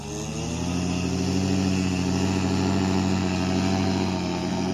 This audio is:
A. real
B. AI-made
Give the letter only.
A